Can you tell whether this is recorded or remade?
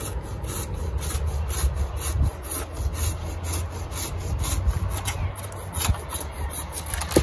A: recorded